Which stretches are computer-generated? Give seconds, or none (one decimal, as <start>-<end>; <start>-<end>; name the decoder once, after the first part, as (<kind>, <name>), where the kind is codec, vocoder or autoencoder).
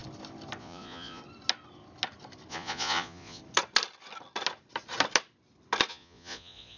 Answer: 0.6-1.2 (vocoder, Vocos); 2.5-3.4; 5.9-6.8